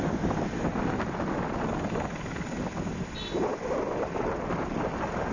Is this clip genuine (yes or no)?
yes